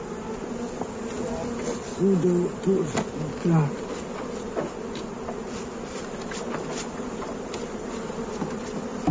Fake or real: real